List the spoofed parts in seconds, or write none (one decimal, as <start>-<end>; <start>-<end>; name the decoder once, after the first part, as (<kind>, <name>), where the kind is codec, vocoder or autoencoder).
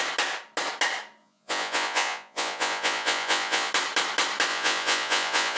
1.2-3.7 (vocoder, Vocos); 4.5-5.6